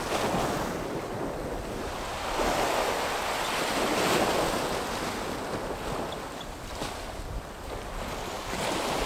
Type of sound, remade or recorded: recorded